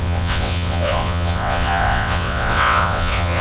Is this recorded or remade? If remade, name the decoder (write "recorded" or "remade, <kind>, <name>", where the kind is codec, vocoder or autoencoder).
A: remade, vocoder, WaveNeXt